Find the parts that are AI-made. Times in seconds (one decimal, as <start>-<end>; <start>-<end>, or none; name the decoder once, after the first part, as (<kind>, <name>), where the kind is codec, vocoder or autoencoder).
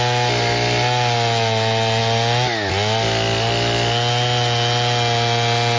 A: none